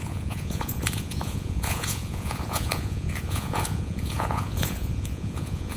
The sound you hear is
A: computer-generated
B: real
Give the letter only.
A